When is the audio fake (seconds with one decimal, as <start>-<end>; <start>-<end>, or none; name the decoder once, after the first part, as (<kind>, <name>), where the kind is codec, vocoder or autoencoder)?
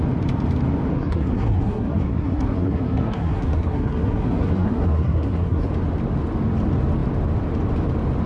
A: 0.9-5.7 (codec, SNAC)